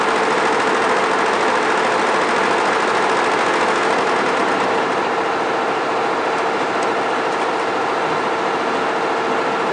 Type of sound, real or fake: real